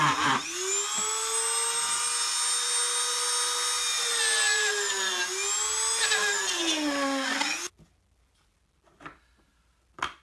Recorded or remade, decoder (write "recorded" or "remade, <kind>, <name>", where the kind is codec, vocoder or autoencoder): recorded